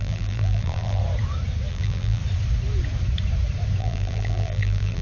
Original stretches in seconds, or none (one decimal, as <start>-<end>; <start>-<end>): 1.0-1.7; 2.2-3.8

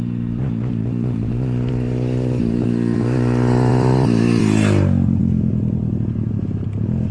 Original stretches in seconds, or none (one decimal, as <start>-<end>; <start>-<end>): 0.0-3.7; 4.4-7.1

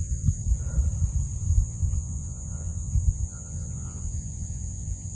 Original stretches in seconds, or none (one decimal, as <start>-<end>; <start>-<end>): 0.4-1.4